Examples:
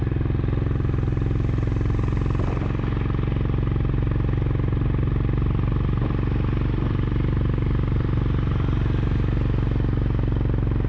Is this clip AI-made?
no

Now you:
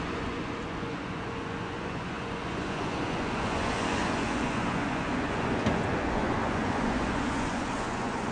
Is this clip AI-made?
yes